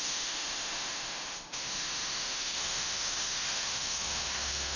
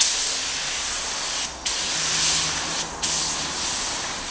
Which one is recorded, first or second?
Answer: second